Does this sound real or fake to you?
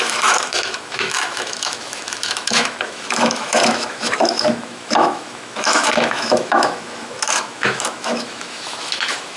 fake